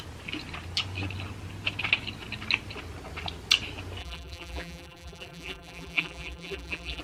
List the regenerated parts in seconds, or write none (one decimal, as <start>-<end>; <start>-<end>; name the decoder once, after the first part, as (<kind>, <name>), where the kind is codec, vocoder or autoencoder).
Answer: 4.0-7.0 (vocoder, BigVGAN v2)